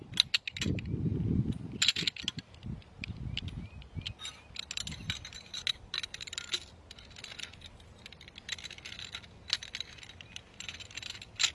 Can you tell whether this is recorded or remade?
recorded